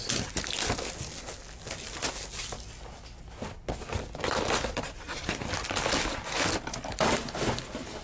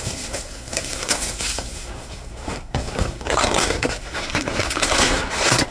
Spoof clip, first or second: second